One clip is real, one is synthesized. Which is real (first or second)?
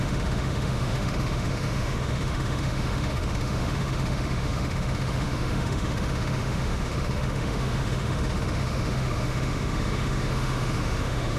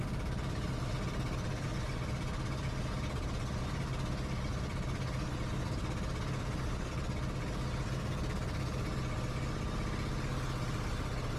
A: second